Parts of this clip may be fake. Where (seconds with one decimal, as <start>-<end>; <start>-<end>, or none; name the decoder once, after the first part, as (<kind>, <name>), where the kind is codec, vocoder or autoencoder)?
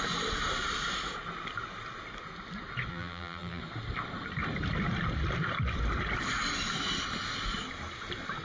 2.9-3.6 (vocoder, BigVGAN v2)